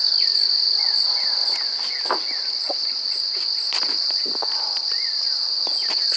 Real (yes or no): yes